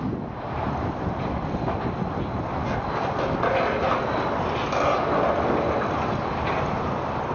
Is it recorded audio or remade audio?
recorded